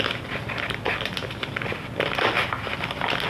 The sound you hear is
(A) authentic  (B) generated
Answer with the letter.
A